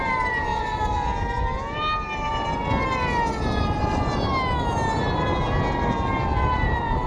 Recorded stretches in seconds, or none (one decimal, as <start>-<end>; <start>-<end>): 0.0-7.1